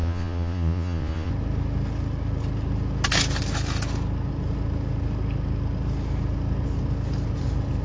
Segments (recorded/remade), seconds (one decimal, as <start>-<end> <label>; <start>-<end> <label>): 0.0-1.3 remade; 1.3-7.8 recorded